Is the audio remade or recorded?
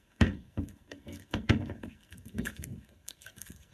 remade